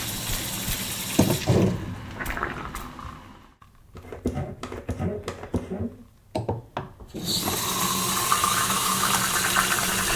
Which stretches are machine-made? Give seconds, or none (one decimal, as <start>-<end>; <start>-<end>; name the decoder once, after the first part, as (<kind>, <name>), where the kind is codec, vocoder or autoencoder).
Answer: 8.4-9.1 (autoencoder, DAC-VAE)